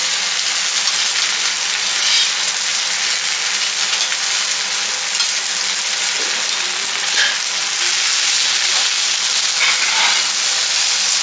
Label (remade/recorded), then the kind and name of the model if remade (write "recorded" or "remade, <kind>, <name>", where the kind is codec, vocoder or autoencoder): recorded